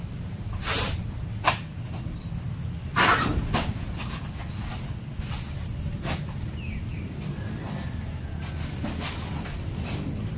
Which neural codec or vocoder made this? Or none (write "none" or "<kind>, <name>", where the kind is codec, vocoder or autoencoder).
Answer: none